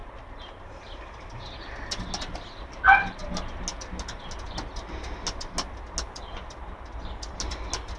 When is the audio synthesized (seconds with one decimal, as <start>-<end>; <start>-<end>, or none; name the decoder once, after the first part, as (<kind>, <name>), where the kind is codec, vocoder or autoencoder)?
none